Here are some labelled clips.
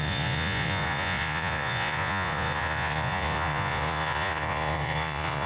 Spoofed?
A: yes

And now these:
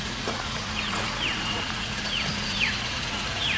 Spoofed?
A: yes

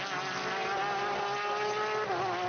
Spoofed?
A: no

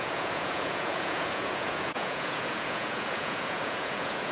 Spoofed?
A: yes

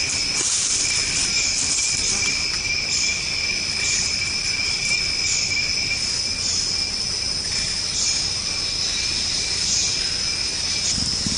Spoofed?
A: no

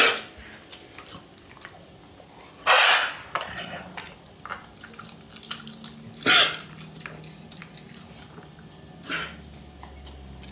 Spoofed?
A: no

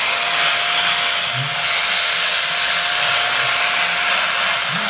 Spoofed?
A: no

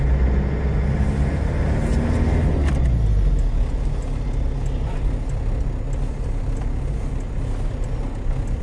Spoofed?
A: no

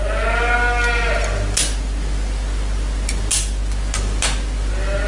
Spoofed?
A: no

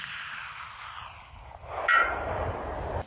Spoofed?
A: no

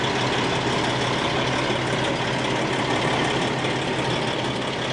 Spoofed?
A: no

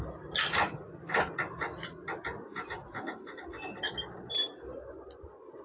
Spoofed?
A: no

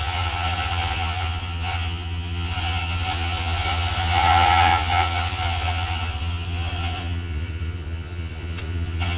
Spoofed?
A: yes